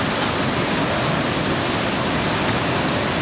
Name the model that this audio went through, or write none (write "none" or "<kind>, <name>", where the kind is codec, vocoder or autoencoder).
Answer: none